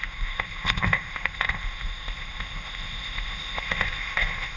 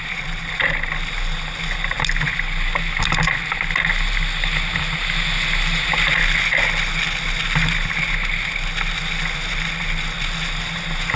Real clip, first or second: second